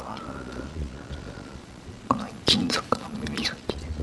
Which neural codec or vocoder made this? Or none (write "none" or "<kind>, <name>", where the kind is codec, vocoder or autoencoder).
vocoder, Vocos